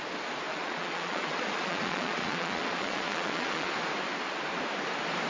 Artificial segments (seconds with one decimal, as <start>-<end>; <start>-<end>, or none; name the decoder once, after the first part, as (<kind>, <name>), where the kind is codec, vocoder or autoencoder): 0.5-3.7 (vocoder, Vocos)